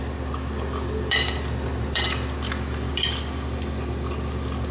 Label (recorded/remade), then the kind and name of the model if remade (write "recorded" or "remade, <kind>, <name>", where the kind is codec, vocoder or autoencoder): remade, vocoder, BigVGAN v2